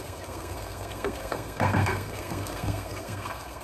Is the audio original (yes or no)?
no